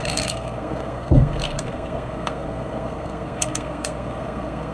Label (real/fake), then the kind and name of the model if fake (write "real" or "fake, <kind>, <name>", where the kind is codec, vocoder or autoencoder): fake, codec, SNAC